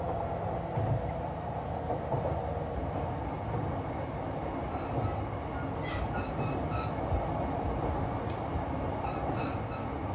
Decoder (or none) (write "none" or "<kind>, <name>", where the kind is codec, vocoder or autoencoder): none